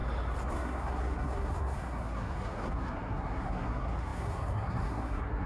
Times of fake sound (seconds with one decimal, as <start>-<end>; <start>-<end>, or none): 0.5-5.5